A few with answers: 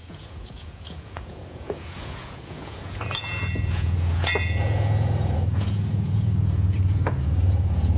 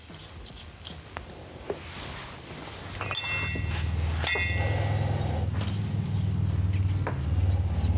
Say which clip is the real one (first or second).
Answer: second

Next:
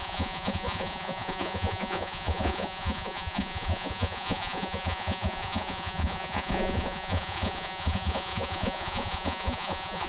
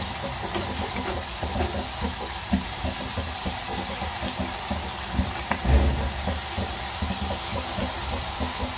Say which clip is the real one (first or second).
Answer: second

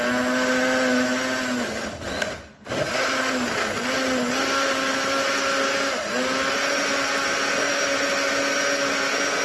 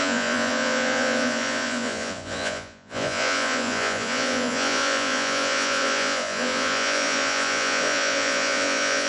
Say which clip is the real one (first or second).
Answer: first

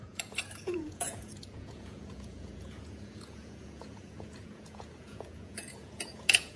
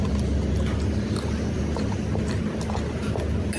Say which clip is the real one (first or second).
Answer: second